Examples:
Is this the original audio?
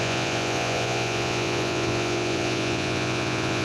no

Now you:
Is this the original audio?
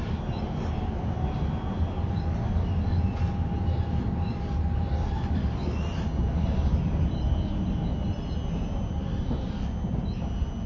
yes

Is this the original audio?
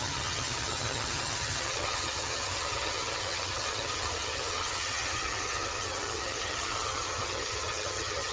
no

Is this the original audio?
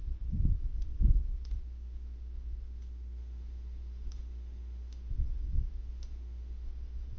no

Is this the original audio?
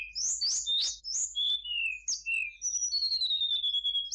yes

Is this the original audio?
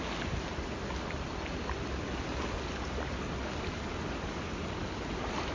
yes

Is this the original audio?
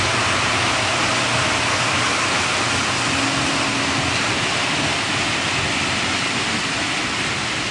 yes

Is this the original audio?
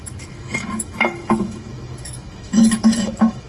no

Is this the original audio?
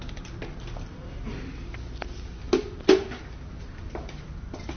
yes